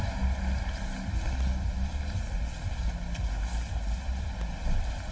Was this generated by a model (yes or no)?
no